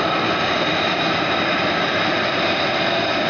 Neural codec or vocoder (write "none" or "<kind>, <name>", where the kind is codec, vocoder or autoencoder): none